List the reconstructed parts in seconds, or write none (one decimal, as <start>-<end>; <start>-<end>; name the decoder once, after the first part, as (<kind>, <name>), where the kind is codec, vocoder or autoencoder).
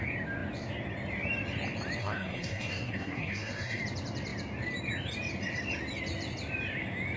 2.0-3.8 (codec, SNAC)